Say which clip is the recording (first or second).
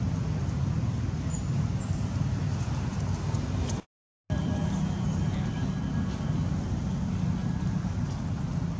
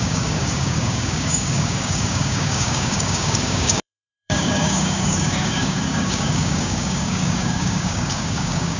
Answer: first